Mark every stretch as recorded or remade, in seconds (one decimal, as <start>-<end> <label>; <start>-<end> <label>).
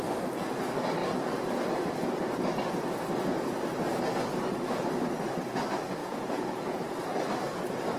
0.0-6.0 recorded; 6.0-6.8 remade; 6.8-8.0 recorded